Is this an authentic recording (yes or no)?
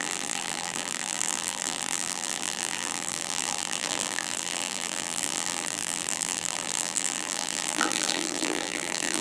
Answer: no